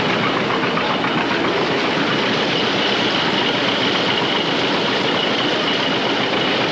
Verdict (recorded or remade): recorded